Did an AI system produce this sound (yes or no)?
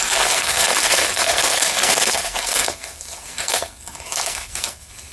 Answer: yes